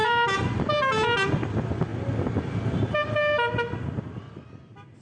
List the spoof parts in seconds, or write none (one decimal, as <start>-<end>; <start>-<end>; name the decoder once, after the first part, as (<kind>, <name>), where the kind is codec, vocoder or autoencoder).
none